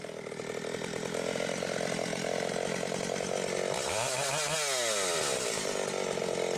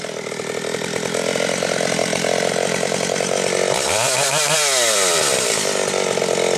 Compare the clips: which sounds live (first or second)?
first